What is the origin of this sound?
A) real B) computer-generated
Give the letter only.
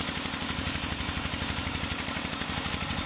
B